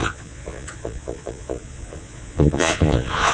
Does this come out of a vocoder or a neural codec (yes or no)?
yes